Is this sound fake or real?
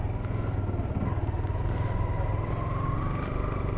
real